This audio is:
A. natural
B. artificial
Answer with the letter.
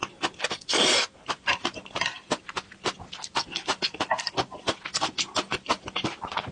B